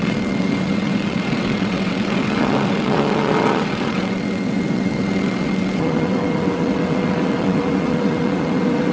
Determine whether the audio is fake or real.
fake